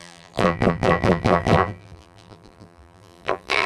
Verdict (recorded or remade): remade